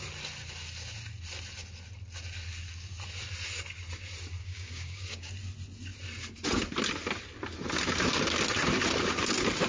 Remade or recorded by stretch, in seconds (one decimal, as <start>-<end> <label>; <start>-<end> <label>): 0.0-4.4 recorded; 4.4-5.3 remade; 5.3-9.7 recorded